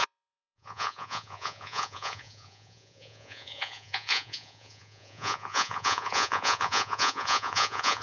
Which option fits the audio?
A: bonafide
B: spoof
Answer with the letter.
B